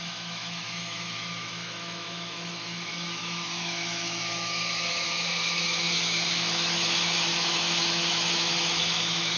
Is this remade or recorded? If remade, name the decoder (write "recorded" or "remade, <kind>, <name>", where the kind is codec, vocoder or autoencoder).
remade, autoencoder, DAC-VAE